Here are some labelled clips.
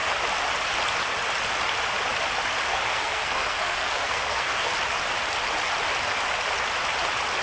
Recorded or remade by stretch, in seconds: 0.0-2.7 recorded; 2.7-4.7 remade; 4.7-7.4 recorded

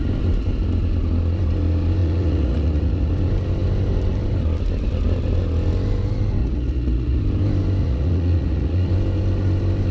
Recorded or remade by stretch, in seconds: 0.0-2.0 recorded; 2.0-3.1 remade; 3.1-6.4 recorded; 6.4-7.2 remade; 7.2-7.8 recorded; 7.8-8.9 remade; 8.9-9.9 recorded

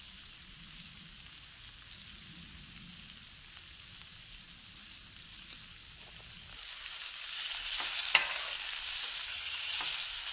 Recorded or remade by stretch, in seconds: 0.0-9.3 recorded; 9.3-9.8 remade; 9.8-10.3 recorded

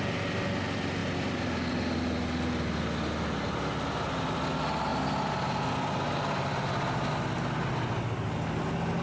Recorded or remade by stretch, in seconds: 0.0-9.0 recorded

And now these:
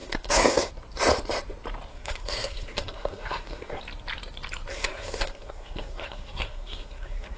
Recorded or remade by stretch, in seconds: 0.0-0.7 remade; 0.7-1.9 recorded; 1.9-3.8 remade; 3.8-4.7 recorded; 4.7-7.4 remade

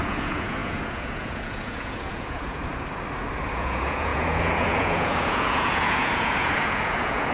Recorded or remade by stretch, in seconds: 0.0-2.6 remade; 2.6-3.5 recorded; 3.5-7.3 remade